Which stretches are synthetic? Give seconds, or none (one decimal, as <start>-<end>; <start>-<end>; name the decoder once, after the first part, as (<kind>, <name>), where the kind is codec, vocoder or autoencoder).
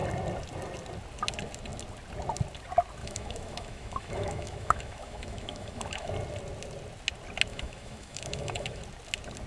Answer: 3.0-6.1 (autoencoder, DAC-VAE); 7.5-8.8